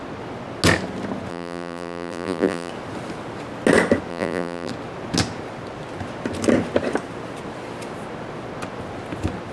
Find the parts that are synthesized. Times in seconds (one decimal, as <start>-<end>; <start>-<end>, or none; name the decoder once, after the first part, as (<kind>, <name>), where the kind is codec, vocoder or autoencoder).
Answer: 1.3-2.7 (vocoder, BigVGAN v2); 4.1-4.7